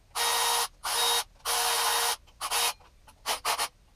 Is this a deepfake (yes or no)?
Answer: no